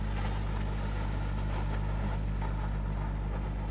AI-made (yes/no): no